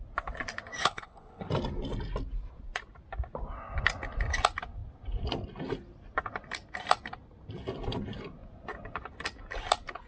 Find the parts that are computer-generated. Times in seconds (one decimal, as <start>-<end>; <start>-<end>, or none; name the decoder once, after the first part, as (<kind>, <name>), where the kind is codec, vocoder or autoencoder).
0.8-1.5 (codec, HILCodec)